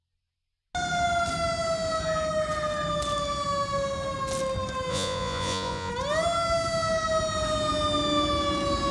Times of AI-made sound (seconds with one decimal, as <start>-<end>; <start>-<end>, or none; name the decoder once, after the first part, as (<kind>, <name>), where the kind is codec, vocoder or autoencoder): 4.9-5.9 (vocoder, Vocos)